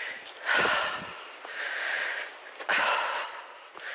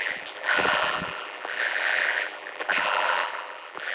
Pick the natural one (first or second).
first